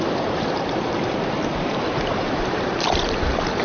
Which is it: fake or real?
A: fake